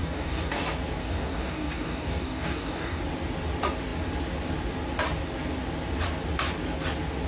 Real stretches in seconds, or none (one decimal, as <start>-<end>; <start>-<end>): 0.6-1.0; 3.0-7.3